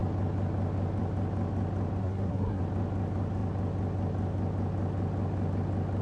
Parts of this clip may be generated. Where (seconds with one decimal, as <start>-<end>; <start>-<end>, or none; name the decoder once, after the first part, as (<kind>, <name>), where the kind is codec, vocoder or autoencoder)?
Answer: 2.0-2.6 (codec, SNAC)